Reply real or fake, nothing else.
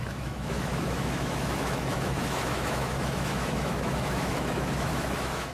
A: fake